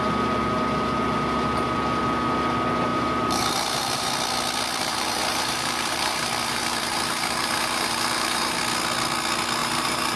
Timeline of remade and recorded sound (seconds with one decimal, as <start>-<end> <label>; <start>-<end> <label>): 0.0-2.9 recorded; 2.9-4.1 remade; 4.1-4.8 recorded; 4.8-8.6 remade; 8.6-9.6 recorded; 9.6-10.2 remade